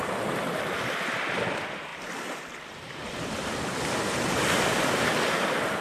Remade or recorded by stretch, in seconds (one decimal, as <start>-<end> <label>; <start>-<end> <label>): 0.0-5.8 recorded